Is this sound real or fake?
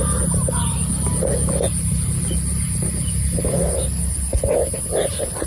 real